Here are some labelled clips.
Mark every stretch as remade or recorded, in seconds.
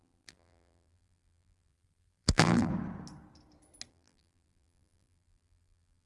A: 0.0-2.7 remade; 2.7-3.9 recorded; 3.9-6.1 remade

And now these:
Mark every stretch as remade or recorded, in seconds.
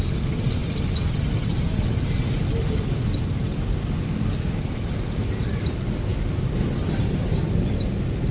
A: 0.0-8.3 recorded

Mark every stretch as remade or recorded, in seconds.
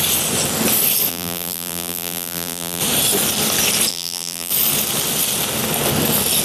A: 0.0-1.1 recorded; 1.1-2.8 remade; 2.8-3.9 recorded; 3.9-4.5 remade; 4.5-6.4 recorded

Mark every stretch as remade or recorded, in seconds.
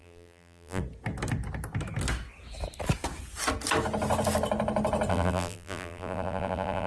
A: 0.0-0.8 remade; 0.8-5.1 recorded; 5.1-6.9 remade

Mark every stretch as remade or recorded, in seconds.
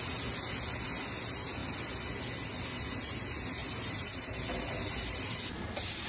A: 0.0-3.6 recorded; 3.6-4.4 remade; 4.4-6.1 recorded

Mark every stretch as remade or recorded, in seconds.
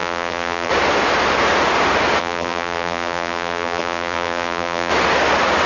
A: 0.0-0.7 remade; 0.7-2.2 recorded; 2.2-4.9 remade; 4.9-5.7 recorded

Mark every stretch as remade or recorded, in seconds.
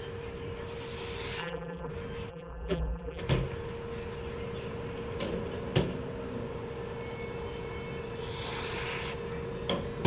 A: 0.0-1.4 recorded; 1.4-1.9 remade; 1.9-2.3 recorded; 2.3-3.2 remade; 3.2-10.1 recorded